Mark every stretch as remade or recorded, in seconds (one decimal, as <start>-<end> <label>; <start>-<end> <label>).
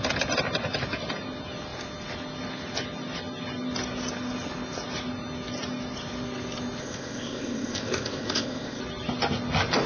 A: 0.0-6.8 recorded; 6.8-8.8 remade; 8.8-9.9 recorded